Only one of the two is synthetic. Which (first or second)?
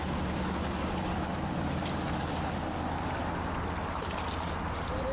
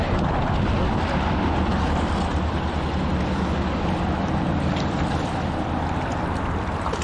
second